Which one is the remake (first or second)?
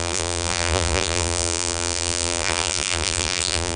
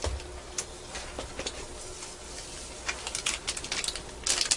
first